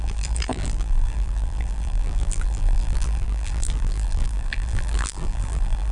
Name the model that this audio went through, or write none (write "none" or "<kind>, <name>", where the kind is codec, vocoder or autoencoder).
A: vocoder, BigVGAN v2